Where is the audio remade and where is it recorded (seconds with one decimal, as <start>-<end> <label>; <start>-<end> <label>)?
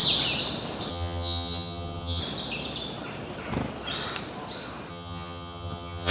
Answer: 0.0-0.9 recorded; 0.9-2.2 remade; 2.2-4.9 recorded; 4.9-6.1 remade